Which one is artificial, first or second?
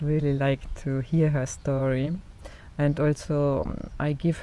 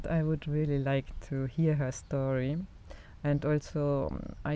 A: first